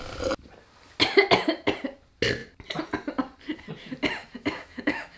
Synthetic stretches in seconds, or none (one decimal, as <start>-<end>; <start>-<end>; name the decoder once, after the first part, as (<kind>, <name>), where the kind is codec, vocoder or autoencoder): 4.2-5.2 (autoencoder, DAC-VAE)

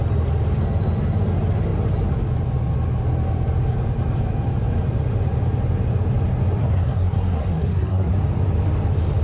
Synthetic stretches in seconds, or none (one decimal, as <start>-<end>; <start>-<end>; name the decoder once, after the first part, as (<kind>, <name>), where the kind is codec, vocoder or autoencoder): 6.6-8.1 (codec, SNAC)

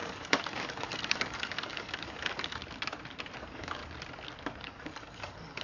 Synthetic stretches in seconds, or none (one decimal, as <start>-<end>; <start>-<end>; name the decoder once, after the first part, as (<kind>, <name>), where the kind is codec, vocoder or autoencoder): 0.0-2.6 (codec, DAC); 3.4-3.8; 4.6-5.6

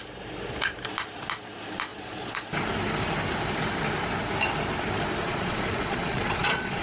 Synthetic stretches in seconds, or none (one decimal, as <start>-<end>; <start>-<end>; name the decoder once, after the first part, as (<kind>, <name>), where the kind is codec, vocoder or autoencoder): 1.9-2.4 (vocoder, Vocos); 5.2-6.8

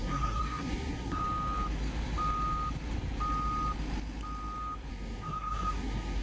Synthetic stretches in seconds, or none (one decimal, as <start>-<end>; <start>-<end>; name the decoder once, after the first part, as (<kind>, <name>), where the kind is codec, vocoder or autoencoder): 0.0-1.2 (codec, SNAC); 4.9-6.2